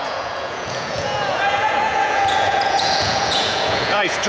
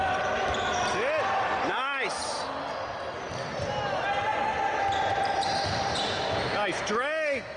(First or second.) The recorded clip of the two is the second